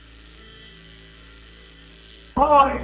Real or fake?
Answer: fake